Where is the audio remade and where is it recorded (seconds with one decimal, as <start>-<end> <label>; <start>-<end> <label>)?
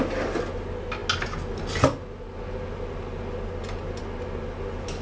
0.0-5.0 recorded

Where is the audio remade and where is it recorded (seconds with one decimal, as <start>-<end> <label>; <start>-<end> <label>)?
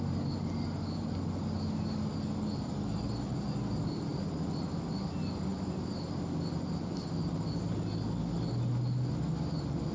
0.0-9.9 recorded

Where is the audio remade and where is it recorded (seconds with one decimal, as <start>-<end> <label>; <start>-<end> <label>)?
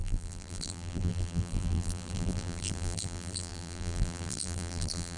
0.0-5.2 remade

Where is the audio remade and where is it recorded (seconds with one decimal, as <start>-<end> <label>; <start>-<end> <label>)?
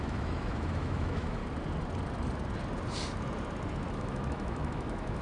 0.0-1.4 remade; 1.4-3.9 recorded; 3.9-5.2 remade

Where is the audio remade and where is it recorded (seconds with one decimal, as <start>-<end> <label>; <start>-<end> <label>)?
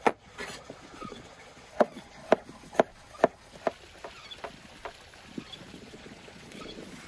0.0-2.2 remade; 2.2-5.7 recorded; 5.7-7.1 remade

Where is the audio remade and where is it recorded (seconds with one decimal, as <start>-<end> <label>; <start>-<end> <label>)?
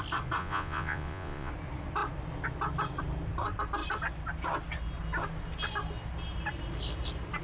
0.0-0.4 recorded; 0.4-1.5 remade; 1.5-7.4 recorded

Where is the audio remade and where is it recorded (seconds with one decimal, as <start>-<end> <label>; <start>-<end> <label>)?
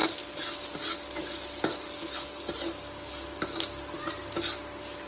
0.0-5.1 recorded